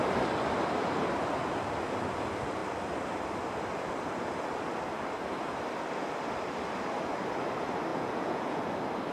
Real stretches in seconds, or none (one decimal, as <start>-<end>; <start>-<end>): 0.0-7.9; 8.6-9.1